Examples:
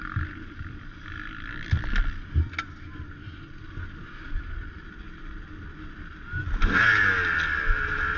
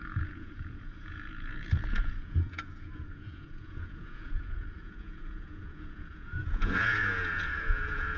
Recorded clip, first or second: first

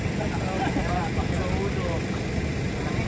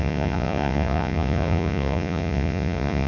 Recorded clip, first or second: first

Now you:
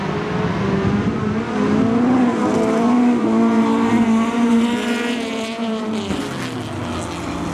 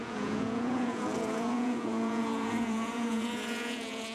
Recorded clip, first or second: first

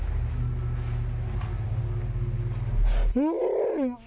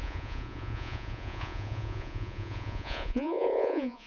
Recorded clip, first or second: first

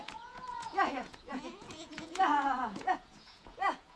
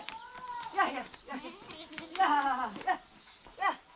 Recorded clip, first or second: second